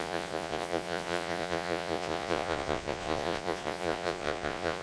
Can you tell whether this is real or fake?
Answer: fake